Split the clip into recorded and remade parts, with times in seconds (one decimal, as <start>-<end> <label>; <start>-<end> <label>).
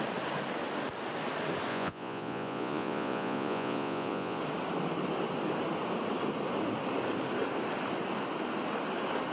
0.0-1.7 recorded; 1.7-4.4 remade; 4.4-9.3 recorded